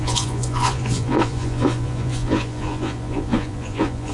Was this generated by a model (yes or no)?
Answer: yes